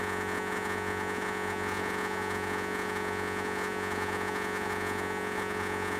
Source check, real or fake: fake